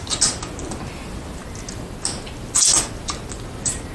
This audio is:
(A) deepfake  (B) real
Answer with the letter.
B